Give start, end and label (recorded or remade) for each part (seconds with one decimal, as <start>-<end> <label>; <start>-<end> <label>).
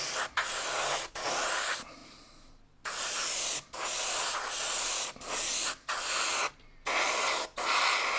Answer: 0.0-8.2 recorded